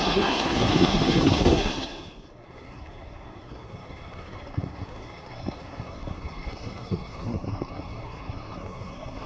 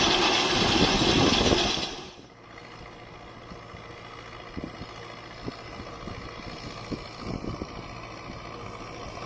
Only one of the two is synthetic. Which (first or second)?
first